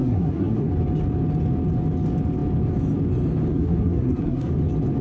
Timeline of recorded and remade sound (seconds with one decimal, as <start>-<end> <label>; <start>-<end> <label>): 0.0-0.7 remade; 0.7-3.5 recorded; 3.5-4.5 remade; 4.5-5.0 recorded